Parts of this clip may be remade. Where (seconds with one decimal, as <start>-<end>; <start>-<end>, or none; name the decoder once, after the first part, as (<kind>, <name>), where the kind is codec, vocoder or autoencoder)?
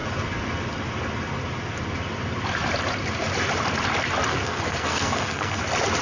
4.3-5.6 (codec, SNAC)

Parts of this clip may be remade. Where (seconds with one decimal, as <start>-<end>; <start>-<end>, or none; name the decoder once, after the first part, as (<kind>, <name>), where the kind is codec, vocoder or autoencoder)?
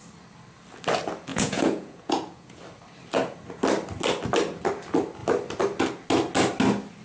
1.3-2.6 (vocoder, Vocos)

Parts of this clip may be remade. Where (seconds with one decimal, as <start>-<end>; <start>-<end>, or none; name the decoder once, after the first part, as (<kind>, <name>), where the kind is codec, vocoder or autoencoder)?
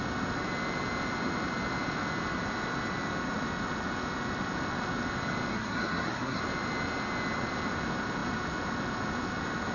5.5-6.4 (codec, SNAC)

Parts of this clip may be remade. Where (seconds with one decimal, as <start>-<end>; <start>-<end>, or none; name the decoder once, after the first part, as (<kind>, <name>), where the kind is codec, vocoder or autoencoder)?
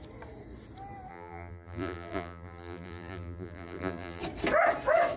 1.1-4.2 (vocoder, BigVGAN v2)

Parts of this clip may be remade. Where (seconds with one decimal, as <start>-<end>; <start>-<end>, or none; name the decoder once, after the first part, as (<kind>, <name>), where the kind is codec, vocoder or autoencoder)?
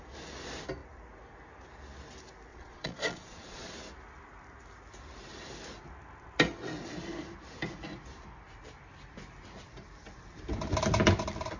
2.5-3.7 (vocoder, Vocos)